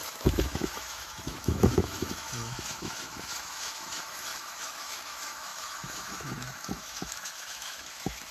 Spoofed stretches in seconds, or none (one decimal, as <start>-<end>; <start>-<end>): 0.0-8.3